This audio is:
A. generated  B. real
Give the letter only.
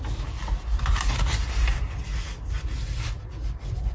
B